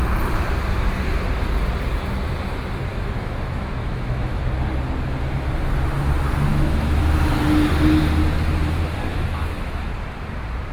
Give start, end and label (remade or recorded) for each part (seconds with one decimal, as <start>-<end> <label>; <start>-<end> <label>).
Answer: 0.0-2.9 recorded; 2.9-4.4 remade; 4.4-6.5 recorded; 6.5-7.0 remade; 7.0-9.1 recorded; 9.1-9.9 remade; 9.9-10.7 recorded